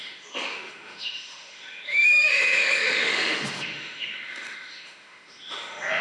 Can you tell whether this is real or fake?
fake